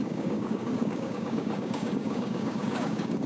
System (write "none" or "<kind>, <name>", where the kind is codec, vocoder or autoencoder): codec, DAC